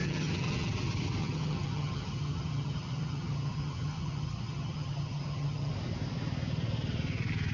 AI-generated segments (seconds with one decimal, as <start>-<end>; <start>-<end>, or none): 0.0-0.7; 1.2-5.7